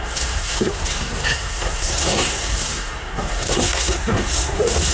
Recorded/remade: remade